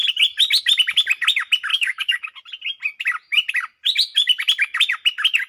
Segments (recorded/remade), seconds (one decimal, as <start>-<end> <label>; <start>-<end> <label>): 0.0-1.7 recorded; 1.7-2.2 remade; 2.2-5.5 recorded